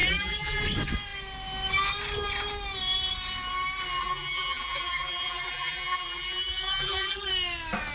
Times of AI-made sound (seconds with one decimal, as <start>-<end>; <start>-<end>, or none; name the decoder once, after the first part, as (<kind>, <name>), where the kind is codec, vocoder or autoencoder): 0.0-0.6 (vocoder, BigVGAN v2); 4.0-7.3